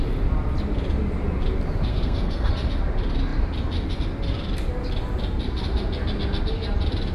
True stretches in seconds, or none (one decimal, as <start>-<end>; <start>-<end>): 0.0-1.9; 2.5-7.1